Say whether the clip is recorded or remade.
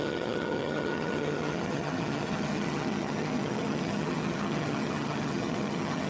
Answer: remade